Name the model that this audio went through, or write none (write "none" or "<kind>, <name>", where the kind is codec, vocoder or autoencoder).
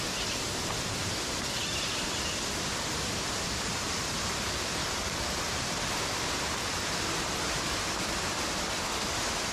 none